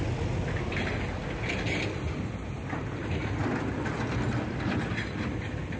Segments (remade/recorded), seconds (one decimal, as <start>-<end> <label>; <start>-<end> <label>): 0.0-5.8 remade